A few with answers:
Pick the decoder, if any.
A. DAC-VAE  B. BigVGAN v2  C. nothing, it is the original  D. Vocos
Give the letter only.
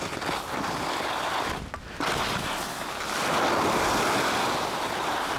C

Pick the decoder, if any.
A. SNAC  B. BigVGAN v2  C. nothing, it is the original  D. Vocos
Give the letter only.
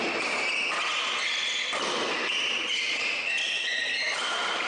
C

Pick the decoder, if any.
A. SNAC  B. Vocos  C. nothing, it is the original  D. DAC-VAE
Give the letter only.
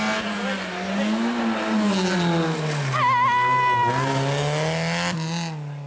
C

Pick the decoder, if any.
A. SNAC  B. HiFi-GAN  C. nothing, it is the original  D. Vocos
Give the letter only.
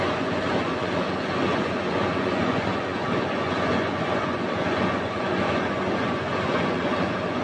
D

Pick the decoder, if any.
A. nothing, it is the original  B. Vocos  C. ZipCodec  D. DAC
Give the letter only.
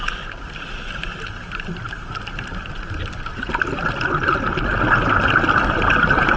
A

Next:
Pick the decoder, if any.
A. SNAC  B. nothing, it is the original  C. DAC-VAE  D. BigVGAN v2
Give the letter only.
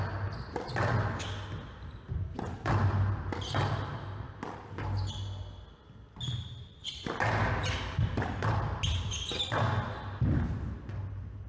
B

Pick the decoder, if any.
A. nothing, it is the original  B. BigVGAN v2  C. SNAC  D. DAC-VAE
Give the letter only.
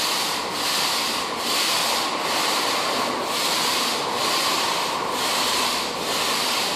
A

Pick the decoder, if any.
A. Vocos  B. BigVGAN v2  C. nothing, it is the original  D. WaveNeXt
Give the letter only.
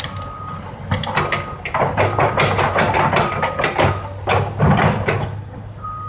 C